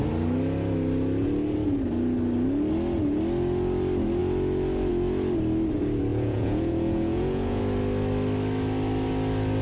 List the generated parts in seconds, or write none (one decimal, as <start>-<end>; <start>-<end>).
6.1-7.6